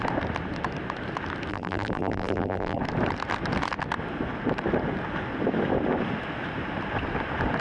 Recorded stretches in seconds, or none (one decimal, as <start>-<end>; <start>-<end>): 0.0-1.5; 2.8-7.6